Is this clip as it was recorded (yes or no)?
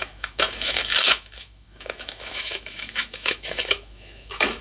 no